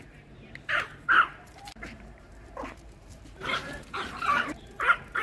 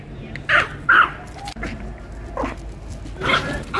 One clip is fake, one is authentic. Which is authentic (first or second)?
second